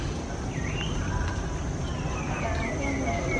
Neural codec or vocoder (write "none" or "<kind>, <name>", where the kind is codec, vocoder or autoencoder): none